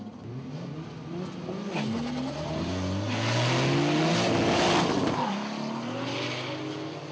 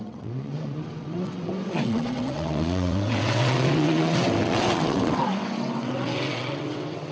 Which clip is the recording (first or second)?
first